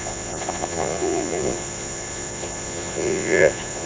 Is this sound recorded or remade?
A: remade